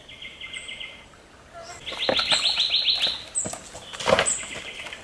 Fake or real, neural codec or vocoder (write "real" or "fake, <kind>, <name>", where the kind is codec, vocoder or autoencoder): real